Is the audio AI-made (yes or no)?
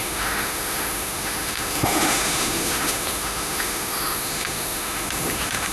yes